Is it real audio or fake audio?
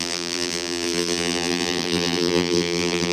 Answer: fake